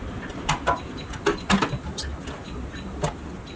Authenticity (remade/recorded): recorded